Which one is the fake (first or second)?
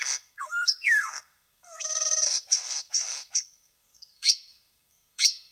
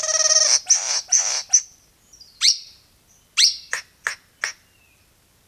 first